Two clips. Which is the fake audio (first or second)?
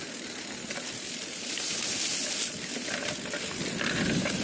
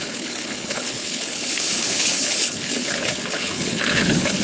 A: second